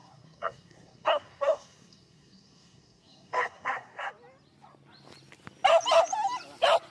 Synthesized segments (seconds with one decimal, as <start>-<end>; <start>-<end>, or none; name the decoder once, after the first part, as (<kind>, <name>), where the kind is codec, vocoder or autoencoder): 0.0-4.1 (codec, SNAC)